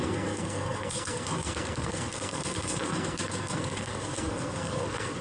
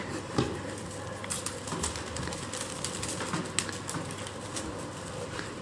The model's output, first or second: first